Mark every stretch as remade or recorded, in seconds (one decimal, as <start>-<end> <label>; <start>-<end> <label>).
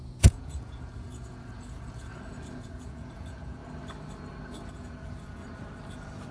0.0-2.1 remade; 2.1-2.6 recorded; 2.6-3.6 remade; 3.6-4.7 recorded; 4.7-5.4 remade; 5.4-6.3 recorded